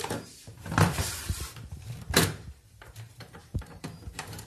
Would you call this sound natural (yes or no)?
no